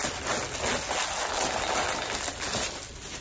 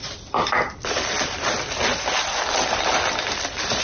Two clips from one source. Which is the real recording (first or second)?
first